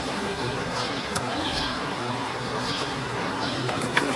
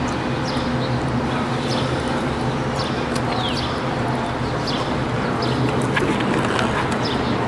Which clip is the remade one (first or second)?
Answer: first